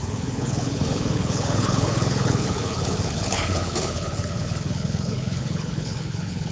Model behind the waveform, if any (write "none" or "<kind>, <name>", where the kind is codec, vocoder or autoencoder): codec, HILCodec